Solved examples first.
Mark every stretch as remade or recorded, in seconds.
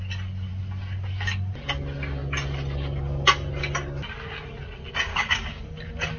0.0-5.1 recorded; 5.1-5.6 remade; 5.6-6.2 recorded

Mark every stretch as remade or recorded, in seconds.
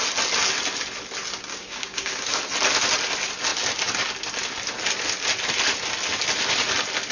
0.0-1.5 recorded; 1.5-2.4 remade; 2.4-7.1 recorded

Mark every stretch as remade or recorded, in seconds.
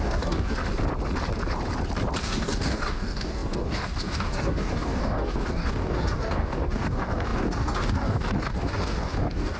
0.0-0.6 remade; 0.6-2.2 recorded; 2.2-9.6 remade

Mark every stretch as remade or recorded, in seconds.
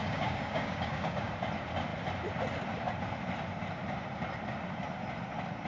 0.0-1.3 remade; 1.3-5.7 recorded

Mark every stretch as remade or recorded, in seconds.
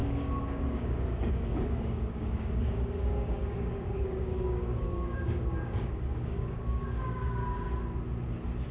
0.0-7.4 remade; 7.4-8.7 recorded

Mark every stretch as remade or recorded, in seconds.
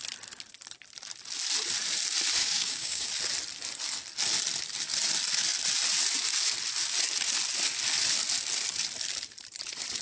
0.0-2.4 recorded; 2.4-3.1 remade; 3.1-10.0 recorded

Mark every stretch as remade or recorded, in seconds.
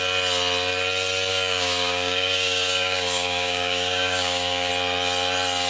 0.0-1.3 recorded; 1.3-4.7 remade; 4.7-5.7 recorded